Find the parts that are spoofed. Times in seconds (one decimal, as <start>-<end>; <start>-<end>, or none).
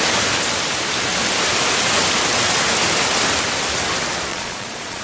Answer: 4.3-5.0